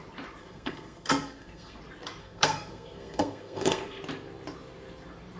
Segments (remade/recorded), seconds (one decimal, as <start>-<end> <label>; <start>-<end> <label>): 0.0-0.4 recorded; 0.4-1.8 remade; 1.8-2.2 recorded; 2.2-4.0 remade; 4.0-5.4 recorded